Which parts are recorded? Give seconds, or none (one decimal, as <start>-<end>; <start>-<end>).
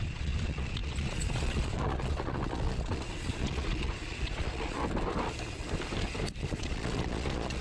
4.8-6.4